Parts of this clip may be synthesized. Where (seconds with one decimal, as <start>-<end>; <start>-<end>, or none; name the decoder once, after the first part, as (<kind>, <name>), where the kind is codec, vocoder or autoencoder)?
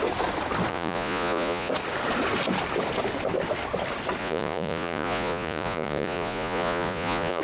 0.7-1.7 (vocoder, Vocos); 4.2-7.4